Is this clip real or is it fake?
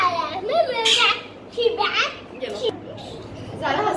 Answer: fake